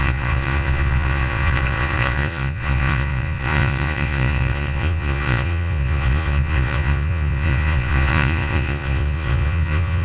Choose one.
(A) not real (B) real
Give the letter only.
A